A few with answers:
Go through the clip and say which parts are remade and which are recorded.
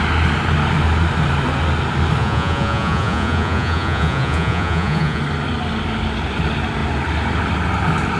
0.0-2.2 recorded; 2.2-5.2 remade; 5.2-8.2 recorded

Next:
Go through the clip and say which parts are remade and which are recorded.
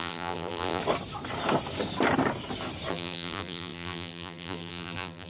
0.0-0.8 remade; 0.8-2.9 recorded; 2.9-5.3 remade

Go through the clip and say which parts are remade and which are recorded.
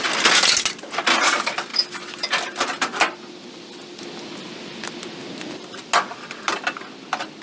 0.0-7.4 recorded